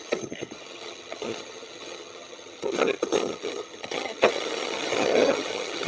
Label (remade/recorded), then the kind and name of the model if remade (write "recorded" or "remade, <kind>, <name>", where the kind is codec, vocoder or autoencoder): remade, vocoder, HiFi-GAN